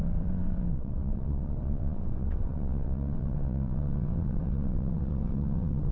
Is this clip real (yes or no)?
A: no